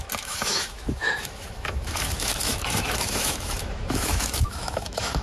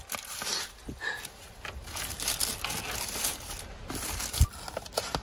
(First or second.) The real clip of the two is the second